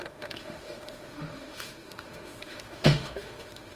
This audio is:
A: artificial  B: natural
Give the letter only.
A